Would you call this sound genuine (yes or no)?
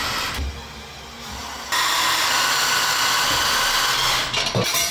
yes